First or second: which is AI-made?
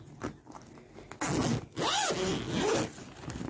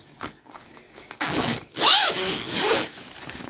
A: second